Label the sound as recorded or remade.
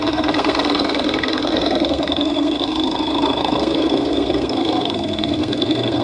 remade